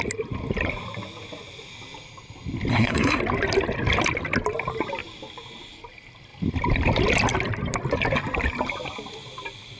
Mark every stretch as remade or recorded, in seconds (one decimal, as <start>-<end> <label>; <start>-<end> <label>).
0.0-2.7 recorded; 2.7-3.2 remade; 3.2-9.8 recorded